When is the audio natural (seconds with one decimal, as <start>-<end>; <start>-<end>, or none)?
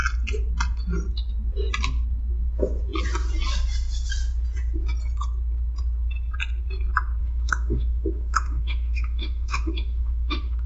0.0-7.2